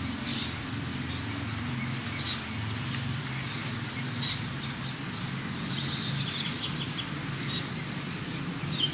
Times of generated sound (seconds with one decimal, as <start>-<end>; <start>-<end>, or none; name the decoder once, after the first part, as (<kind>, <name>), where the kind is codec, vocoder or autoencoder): none